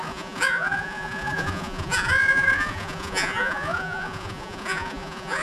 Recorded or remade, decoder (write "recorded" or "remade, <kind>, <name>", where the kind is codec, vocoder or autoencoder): remade, vocoder, Vocos